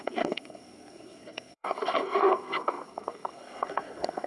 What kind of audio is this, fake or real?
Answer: fake